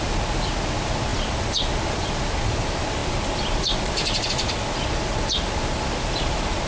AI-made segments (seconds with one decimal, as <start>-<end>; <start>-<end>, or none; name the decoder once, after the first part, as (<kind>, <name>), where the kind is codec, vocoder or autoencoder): none